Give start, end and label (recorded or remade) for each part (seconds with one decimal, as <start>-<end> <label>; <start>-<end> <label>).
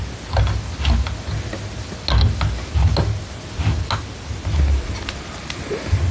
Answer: 0.0-6.1 recorded